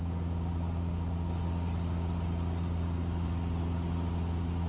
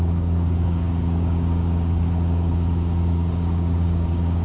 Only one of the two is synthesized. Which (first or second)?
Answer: second